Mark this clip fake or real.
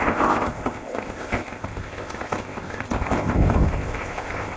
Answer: fake